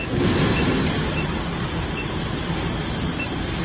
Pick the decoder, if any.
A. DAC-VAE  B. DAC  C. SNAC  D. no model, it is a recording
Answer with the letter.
D